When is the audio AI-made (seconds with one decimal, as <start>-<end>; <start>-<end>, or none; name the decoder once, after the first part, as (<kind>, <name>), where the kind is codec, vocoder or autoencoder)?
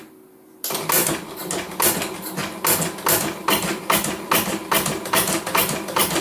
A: none